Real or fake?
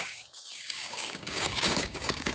fake